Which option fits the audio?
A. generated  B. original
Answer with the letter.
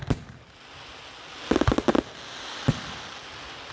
B